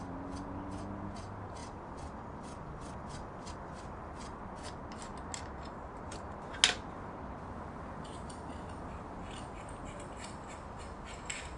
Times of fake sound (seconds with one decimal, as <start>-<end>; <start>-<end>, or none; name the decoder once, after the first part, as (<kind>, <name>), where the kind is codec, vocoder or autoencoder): 1.6-4.4 (vocoder, BigVGAN v2)